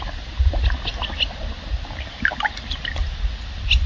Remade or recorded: recorded